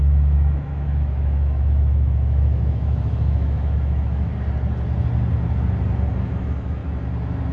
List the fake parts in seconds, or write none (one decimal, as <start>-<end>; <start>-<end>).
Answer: 0.0-4.3; 6.2-6.8